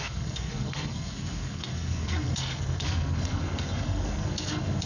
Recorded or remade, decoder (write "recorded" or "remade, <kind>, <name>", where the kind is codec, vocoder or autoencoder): remade, codec, SNAC